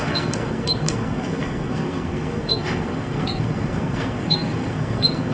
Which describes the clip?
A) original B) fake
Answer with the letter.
B